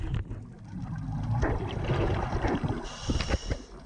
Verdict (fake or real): real